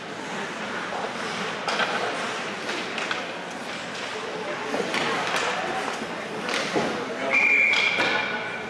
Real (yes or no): yes